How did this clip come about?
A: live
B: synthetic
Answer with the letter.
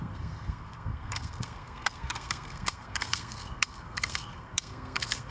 B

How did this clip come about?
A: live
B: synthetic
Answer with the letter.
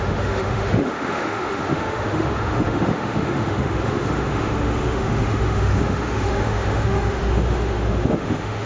B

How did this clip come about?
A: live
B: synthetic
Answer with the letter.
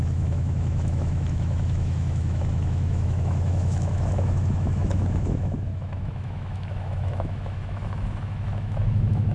B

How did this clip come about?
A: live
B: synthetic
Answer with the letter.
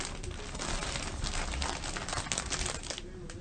A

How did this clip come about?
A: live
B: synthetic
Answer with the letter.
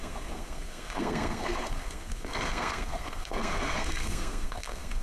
B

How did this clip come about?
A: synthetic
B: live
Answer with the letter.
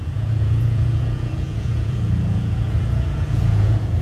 A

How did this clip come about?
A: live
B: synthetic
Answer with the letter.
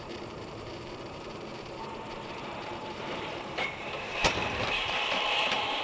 B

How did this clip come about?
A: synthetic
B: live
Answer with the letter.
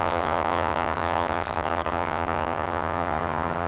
A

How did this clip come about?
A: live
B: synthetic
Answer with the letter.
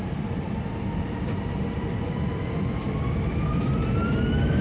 A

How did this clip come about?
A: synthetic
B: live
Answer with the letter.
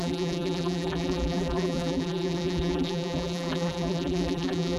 A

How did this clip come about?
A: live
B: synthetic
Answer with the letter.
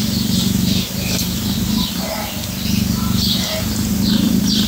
A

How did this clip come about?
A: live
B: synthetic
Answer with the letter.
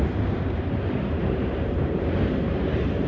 B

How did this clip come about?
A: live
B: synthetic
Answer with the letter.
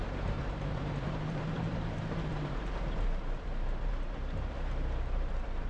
B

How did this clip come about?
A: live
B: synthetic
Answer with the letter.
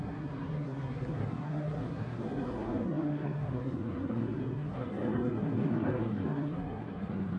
B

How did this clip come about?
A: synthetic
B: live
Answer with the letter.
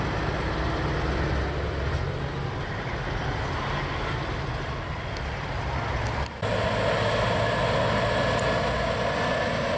B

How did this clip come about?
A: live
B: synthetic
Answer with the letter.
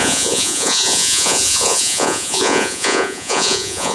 B